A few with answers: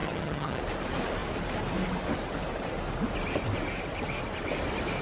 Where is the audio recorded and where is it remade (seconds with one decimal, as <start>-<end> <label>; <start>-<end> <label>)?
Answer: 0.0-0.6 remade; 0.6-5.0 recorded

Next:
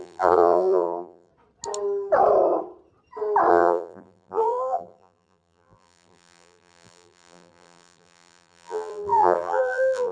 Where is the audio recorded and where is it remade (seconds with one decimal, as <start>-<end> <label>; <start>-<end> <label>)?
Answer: 0.0-1.3 remade; 1.3-3.5 recorded; 3.5-10.1 remade

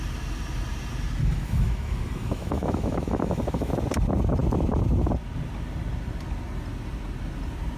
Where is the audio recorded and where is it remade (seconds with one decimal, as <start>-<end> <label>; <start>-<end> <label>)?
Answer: 0.0-1.2 recorded; 1.2-3.7 remade; 3.7-7.8 recorded

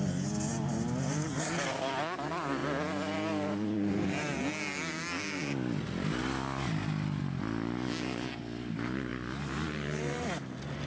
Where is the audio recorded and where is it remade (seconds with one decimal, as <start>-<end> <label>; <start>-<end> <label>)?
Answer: 0.0-10.9 recorded

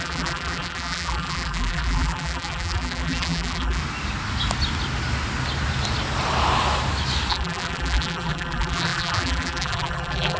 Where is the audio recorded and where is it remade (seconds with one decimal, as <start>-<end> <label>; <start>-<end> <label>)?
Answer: 0.0-3.8 remade; 3.8-7.3 recorded; 7.3-10.4 remade

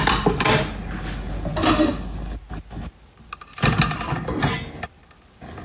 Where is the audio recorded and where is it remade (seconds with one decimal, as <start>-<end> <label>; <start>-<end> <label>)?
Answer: 0.0-5.6 recorded

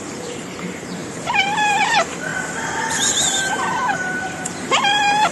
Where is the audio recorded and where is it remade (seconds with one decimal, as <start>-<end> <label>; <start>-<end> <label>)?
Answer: 0.0-2.3 remade; 2.3-3.0 recorded; 3.0-5.3 remade